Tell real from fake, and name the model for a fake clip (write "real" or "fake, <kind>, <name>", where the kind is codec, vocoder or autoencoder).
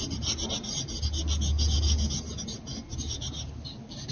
real